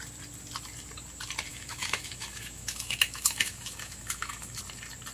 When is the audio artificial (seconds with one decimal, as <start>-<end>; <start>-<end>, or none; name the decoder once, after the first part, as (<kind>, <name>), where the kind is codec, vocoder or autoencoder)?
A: 1.5-4.6 (autoencoder, DAC-VAE)